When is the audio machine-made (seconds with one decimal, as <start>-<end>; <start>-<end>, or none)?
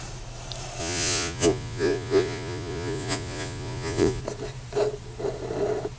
0.8-4.2